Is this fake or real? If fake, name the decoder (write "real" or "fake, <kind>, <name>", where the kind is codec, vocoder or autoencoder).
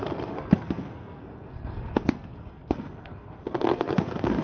fake, codec, SNAC